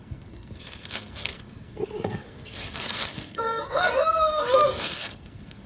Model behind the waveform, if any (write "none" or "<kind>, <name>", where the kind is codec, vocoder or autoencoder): codec, SNAC